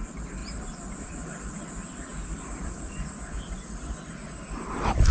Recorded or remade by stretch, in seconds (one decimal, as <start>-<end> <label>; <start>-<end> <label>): 0.0-5.1 remade